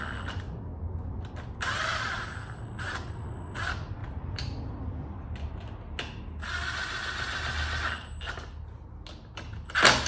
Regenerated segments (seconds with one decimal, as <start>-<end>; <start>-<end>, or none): none